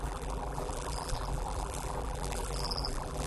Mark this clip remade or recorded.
remade